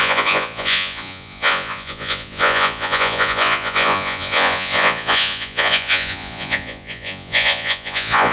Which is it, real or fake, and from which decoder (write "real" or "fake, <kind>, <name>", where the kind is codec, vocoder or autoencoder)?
fake, vocoder, Vocos